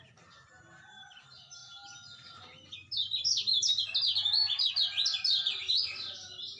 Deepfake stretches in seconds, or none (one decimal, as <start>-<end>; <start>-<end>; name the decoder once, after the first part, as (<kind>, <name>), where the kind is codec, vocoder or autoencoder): none